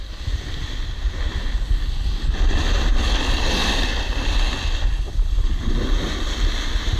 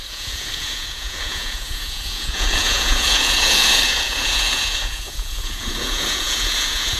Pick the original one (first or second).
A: first